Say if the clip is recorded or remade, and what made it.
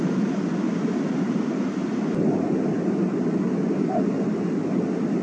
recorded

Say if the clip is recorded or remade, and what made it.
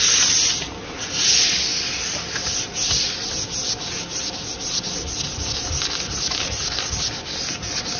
recorded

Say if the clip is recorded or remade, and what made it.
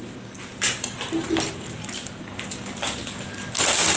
recorded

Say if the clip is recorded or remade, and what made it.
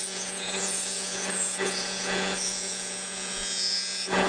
remade, vocoder, Vocos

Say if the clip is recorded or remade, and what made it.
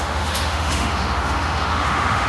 remade, autoencoder, DAC-VAE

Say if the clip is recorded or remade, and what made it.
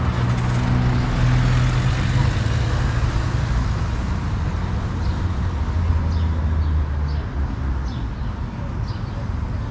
recorded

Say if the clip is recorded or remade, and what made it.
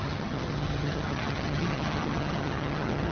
remade, vocoder, HiFi-GAN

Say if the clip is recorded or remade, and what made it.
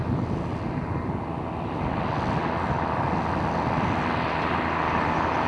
recorded